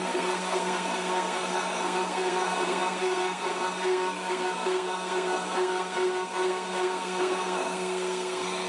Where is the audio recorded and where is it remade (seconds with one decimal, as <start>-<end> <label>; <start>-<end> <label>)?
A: 0.0-8.7 remade